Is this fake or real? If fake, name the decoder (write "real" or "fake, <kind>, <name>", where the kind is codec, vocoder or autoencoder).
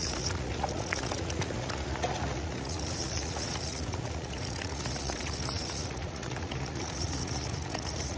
fake, vocoder, Vocos